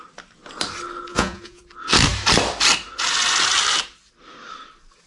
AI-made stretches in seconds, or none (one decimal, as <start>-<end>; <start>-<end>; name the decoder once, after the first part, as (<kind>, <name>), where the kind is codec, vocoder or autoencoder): 1.1-1.6 (vocoder, Vocos)